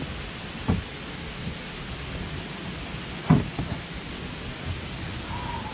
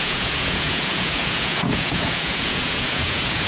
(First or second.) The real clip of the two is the first